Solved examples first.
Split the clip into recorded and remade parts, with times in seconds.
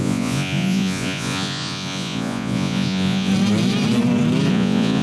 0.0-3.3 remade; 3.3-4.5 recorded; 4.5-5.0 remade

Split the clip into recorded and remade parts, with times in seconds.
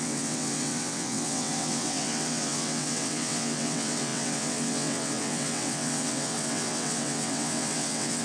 0.0-8.2 remade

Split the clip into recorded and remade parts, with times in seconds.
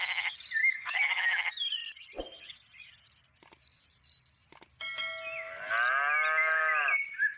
0.0-0.6 recorded; 0.6-1.2 remade; 1.2-7.4 recorded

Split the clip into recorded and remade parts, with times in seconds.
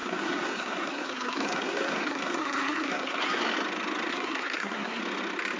0.0-3.4 remade; 3.4-4.1 recorded; 4.1-5.0 remade; 5.0-5.6 recorded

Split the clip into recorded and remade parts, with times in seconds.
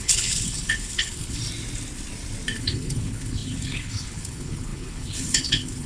0.0-1.4 remade; 1.4-2.6 recorded; 2.6-5.9 remade